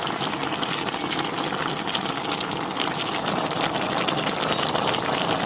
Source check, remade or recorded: recorded